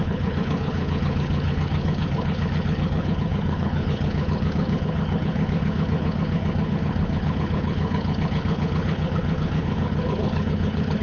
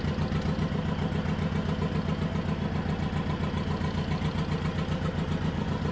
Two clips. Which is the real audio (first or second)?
second